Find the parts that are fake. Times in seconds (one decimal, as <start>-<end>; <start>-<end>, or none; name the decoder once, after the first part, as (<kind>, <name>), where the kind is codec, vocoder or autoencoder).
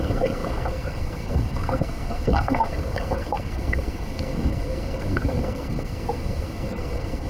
0.0-7.3 (codec, SNAC)